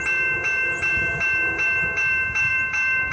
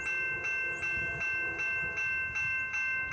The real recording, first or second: second